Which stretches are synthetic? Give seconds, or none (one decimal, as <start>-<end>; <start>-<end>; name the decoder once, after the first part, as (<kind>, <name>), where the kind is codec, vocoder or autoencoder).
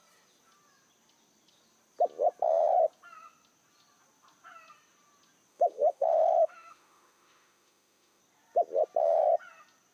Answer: 5.5-8.2 (autoencoder, DAC-VAE)